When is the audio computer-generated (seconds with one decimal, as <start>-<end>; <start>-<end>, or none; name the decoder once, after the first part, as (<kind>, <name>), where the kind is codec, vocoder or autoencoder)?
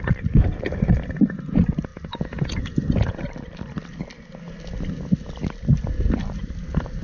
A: 0.0-1.9 (vocoder, BigVGAN v2); 6.1-7.0